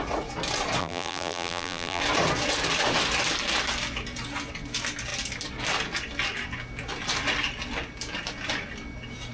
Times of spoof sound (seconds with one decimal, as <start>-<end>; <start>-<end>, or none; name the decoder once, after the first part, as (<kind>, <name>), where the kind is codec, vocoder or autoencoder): 0.8-2.0 (vocoder, BigVGAN v2)